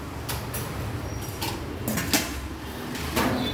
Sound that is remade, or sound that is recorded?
recorded